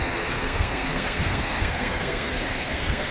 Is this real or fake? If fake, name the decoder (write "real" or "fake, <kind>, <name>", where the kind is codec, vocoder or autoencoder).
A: fake, codec, SNAC